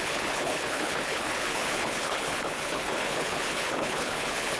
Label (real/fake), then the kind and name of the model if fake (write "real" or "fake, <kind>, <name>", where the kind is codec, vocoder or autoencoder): fake, codec, HILCodec